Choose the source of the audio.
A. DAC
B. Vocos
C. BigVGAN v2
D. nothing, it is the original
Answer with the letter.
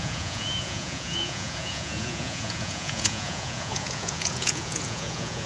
B